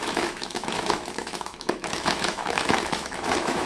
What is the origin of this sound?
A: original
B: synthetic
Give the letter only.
B